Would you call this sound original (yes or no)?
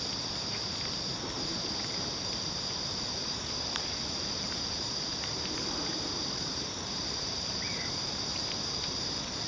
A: no